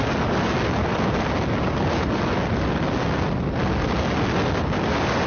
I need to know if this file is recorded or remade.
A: recorded